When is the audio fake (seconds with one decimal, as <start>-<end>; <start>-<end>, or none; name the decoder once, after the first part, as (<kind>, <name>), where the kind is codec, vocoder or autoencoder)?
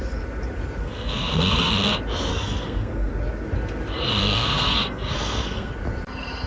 0.8-1.7 (codec, SNAC); 2.3-3.1; 4.2-5.7